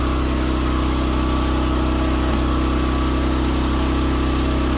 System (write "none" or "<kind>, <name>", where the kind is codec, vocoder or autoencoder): none